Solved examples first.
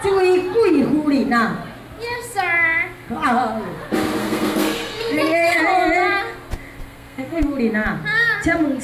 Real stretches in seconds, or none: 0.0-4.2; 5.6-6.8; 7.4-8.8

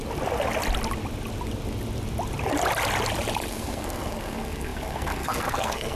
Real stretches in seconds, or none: 0.0-3.5

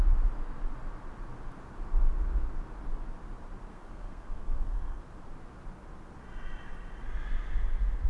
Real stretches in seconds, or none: 0.0-3.7; 5.0-8.1